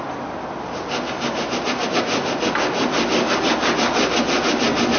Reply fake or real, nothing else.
real